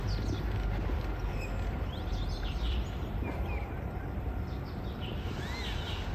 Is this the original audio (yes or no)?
yes